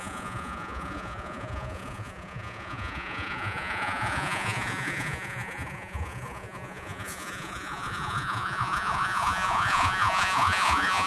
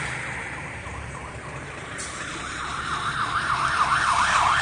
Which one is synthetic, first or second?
first